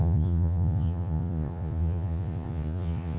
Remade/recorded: remade